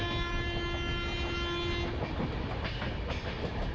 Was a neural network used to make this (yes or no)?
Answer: no